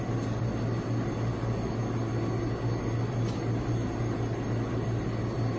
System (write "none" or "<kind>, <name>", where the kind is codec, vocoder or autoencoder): none